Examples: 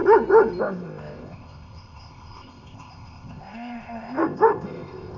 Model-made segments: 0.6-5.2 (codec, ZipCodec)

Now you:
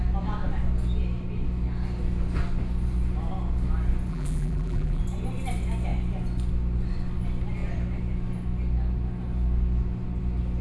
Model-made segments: 4.1-5.0 (vocoder, BigVGAN v2)